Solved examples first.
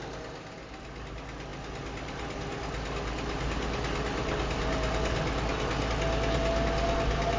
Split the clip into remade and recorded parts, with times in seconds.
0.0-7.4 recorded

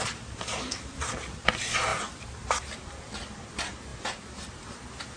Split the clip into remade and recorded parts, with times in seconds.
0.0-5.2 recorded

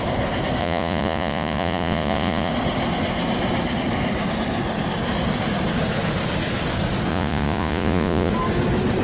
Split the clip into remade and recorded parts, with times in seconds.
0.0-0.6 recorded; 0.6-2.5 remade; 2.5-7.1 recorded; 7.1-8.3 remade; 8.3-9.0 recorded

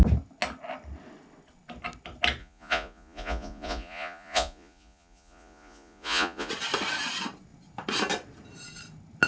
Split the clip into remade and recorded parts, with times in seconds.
0.0-2.4 recorded; 2.4-6.5 remade; 6.5-9.3 recorded